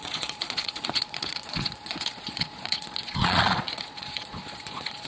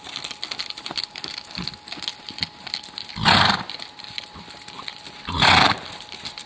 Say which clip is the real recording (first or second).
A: second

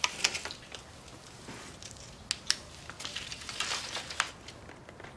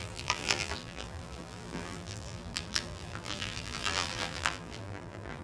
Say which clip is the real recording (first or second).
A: first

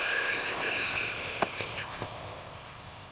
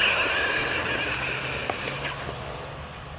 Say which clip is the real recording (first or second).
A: second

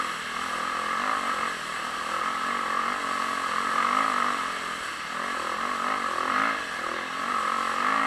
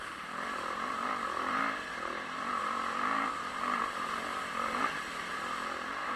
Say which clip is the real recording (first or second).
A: first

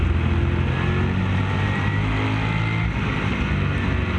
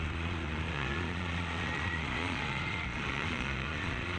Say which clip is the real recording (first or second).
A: first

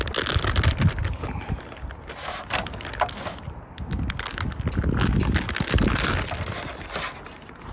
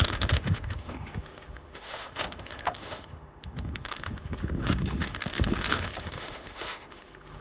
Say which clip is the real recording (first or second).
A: first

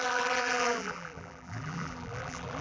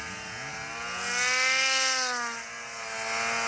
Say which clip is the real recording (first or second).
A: second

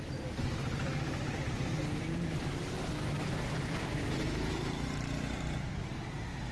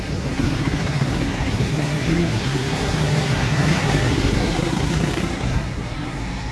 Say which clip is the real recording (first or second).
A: first